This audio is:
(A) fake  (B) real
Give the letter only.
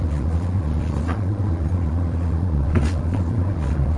A